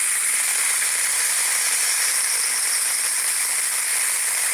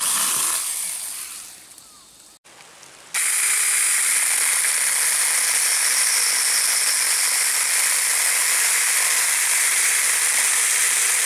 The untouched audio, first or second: second